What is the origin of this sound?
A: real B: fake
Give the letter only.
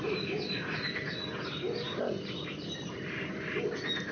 A